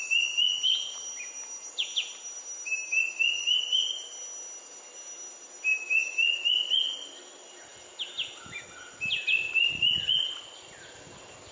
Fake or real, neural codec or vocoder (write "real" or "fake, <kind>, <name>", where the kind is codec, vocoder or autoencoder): real